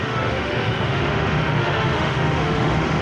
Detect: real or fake fake